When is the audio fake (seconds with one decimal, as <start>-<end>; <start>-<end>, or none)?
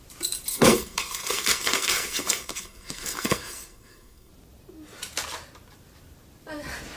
0.5-4.3